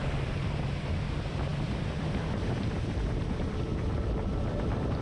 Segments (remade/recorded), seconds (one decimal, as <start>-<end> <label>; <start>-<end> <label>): 0.0-5.0 remade